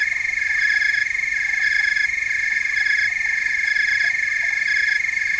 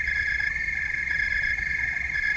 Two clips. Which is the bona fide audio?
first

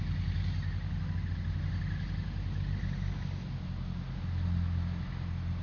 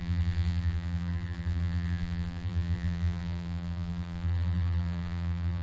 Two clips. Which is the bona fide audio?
first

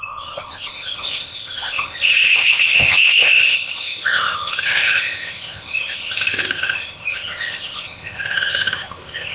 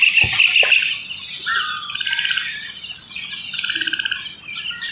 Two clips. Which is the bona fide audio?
second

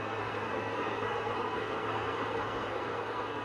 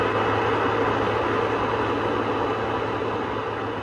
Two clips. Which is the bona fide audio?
second